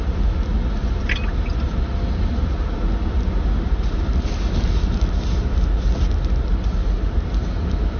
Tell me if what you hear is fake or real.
real